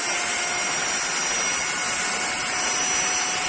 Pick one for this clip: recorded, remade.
recorded